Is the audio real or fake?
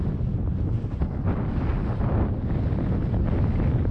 real